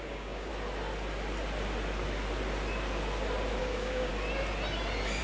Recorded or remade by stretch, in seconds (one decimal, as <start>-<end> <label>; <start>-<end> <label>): 0.0-0.5 remade; 0.5-3.6 recorded; 3.6-4.1 remade; 4.1-5.2 recorded